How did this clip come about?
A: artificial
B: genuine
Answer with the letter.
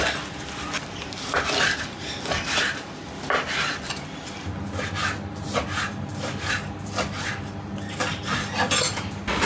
B